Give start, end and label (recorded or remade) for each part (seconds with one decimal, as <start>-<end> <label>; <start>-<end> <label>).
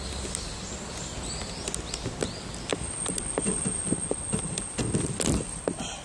0.0-6.0 recorded